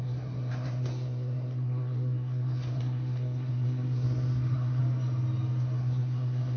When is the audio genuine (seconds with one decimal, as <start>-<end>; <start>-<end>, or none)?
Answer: 4.8-5.8